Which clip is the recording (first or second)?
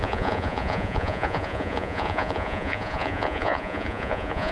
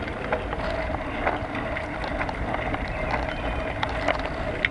second